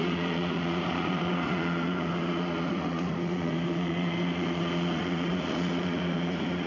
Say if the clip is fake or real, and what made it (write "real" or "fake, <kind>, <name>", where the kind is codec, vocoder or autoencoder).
fake, vocoder, Vocos